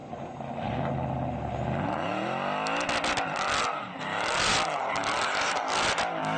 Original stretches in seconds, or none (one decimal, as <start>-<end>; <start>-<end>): 0.0-6.4